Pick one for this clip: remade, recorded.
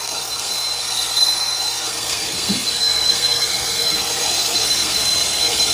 remade